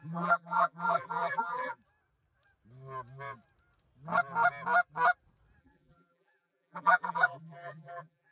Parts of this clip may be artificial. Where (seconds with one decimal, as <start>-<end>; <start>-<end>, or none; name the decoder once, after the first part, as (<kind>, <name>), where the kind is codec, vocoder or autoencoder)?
0.0-1.8 (vocoder, BigVGAN v2); 5.6-8.3